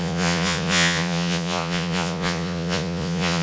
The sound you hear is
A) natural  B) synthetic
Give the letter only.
B